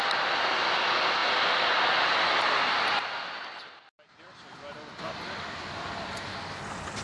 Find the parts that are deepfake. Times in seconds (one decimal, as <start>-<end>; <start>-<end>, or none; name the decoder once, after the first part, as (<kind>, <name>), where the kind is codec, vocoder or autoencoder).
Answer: none